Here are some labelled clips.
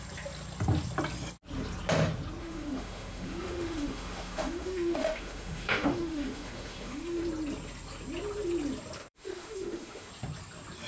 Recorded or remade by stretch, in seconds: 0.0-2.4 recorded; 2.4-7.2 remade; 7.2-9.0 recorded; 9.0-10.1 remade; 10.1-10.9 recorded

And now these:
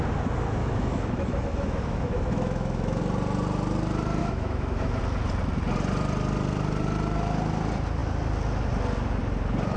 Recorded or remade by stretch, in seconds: 0.0-0.6 recorded; 0.6-3.0 remade; 3.0-4.2 recorded; 4.2-5.0 remade; 5.0-9.8 recorded